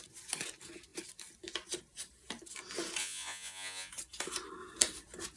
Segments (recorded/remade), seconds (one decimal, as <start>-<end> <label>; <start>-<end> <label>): 0.0-3.0 recorded; 3.0-3.9 remade; 3.9-5.4 recorded